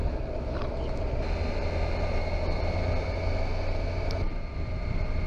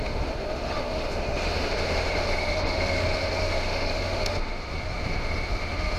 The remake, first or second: second